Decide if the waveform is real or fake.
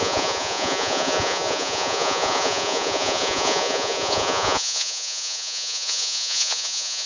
fake